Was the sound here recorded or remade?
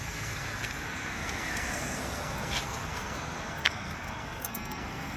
remade